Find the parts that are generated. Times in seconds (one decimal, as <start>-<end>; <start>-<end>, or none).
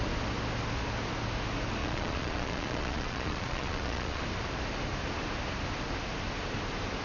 1.8-4.2